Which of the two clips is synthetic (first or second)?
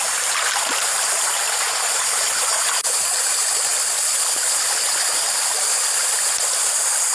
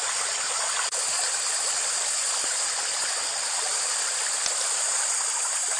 second